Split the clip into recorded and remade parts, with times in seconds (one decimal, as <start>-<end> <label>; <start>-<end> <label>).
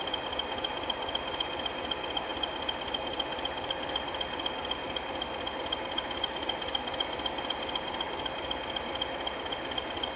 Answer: 0.0-10.2 recorded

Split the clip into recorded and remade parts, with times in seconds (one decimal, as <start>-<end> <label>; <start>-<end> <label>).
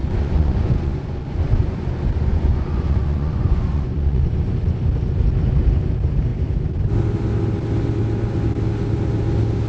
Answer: 0.0-4.5 remade; 4.5-9.7 recorded